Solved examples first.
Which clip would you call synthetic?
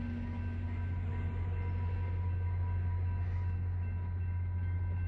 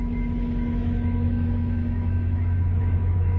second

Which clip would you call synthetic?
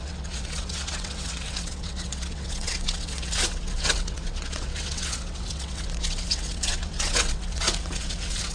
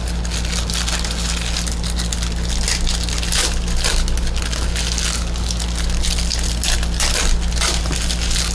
first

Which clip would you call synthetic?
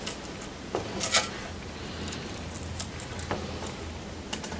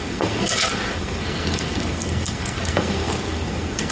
second